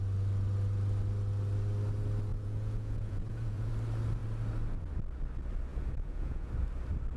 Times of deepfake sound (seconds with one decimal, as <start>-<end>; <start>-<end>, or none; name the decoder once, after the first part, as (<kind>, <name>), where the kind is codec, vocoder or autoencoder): 2.3-3.7 (vocoder, Vocos); 5.7-6.5